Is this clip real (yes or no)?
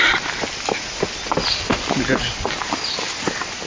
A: yes